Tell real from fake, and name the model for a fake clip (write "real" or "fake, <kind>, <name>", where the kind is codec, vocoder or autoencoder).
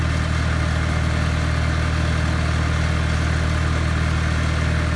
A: real